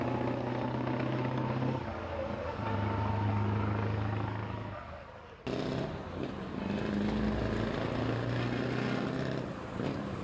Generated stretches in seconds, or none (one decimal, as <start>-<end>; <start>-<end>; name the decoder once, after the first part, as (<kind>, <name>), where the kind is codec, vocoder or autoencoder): 0.5-5.4 (codec, DAC)